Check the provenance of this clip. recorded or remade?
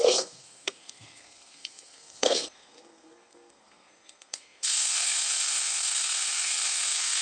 remade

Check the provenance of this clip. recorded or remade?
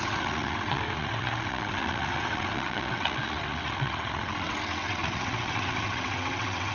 remade